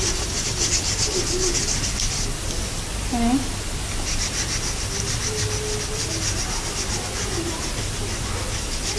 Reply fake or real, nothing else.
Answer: real